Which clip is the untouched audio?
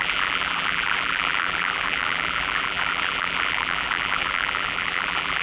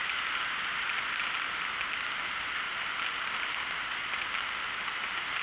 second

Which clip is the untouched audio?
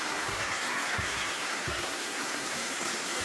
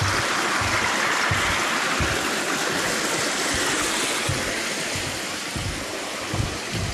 second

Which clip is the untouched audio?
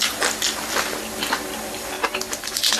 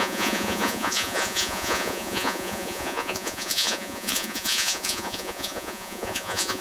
first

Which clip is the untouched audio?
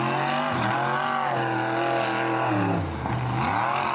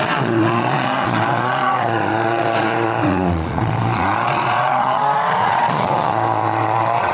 first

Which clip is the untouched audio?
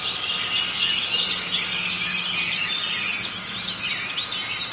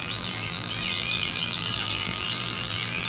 first